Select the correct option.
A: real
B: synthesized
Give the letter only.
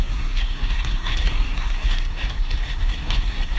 B